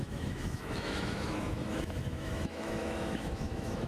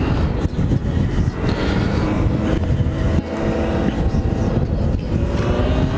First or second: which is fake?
first